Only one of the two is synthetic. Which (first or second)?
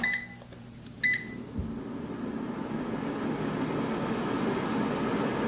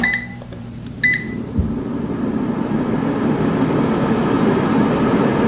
second